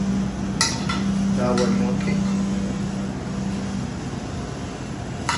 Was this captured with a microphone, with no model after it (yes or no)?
yes